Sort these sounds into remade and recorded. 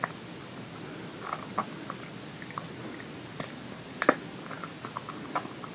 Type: recorded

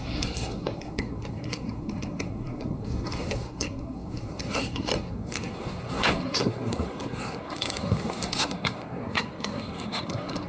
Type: remade